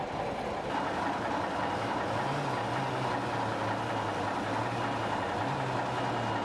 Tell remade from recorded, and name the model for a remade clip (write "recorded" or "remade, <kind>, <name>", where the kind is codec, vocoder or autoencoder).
recorded